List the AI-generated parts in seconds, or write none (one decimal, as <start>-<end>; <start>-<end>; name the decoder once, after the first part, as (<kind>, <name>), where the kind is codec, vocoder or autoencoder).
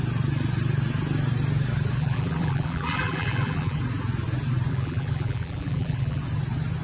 2.0-3.8 (vocoder, BigVGAN v2); 4.7-6.2